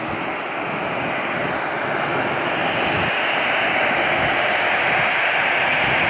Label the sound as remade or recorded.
recorded